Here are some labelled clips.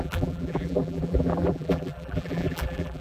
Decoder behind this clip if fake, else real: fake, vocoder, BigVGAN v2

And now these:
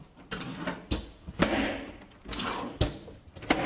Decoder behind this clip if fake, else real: real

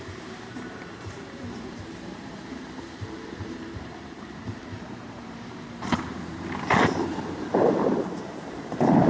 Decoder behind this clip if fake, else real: fake, vocoder, BigVGAN v2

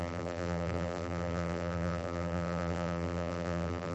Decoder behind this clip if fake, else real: fake, vocoder, BigVGAN v2